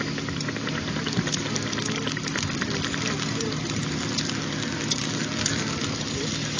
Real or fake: real